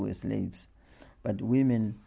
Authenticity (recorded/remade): recorded